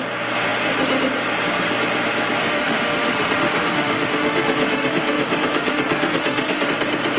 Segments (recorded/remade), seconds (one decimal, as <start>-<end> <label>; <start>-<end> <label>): 0.0-2.4 recorded; 2.4-6.7 remade; 6.7-7.2 recorded